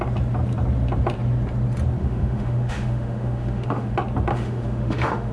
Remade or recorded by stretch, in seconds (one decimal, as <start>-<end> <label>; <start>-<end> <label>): 0.0-2.0 recorded; 2.0-3.9 remade; 3.9-4.3 recorded; 4.3-5.3 remade